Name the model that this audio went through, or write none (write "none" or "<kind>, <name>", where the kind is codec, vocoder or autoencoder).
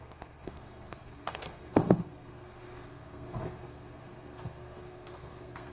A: codec, SNAC